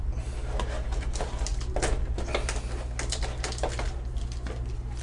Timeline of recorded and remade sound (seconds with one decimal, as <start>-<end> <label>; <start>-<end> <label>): 0.0-5.0 recorded